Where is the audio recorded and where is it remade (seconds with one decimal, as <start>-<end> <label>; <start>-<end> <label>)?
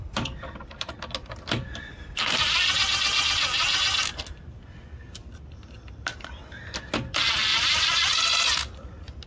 0.0-7.5 recorded; 7.5-8.1 remade; 8.1-9.3 recorded